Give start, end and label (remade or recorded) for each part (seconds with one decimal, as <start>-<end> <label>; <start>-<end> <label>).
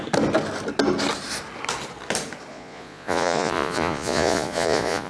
0.0-2.5 recorded; 2.5-5.1 remade